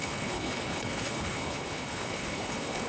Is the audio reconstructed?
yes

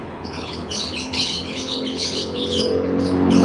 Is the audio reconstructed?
yes